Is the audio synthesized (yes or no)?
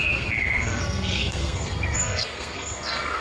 yes